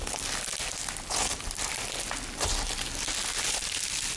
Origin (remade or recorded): recorded